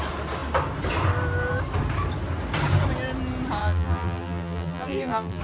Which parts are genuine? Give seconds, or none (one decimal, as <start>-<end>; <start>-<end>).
0.0-3.6